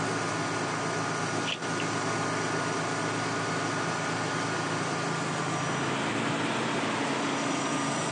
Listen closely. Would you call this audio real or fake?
real